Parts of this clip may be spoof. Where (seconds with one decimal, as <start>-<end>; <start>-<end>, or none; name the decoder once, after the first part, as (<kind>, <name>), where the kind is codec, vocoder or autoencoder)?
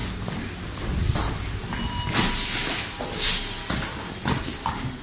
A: none